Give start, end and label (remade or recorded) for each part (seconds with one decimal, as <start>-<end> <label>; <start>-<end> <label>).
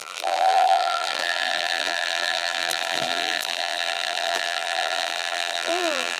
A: 0.0-6.2 remade